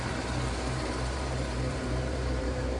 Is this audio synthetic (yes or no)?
yes